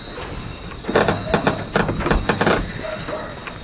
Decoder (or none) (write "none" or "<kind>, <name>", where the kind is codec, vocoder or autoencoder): none